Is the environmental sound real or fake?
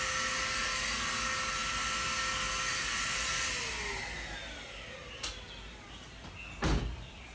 real